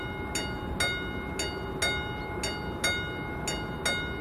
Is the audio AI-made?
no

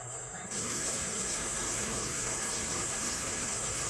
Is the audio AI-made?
yes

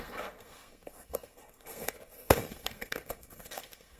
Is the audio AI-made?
yes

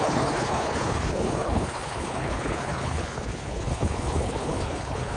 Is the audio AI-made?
yes